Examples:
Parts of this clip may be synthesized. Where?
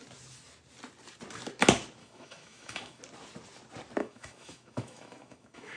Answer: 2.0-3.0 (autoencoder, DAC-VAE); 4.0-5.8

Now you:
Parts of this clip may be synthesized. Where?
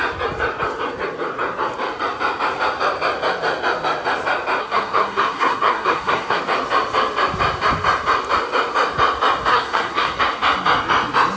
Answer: 4.6-6.4 (codec, SNAC); 9.5-10.2